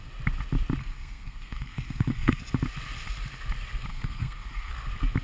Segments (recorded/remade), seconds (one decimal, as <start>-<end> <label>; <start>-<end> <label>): 0.0-0.8 recorded; 0.8-2.4 remade; 2.4-3.9 recorded; 3.9-4.7 remade; 4.7-5.2 recorded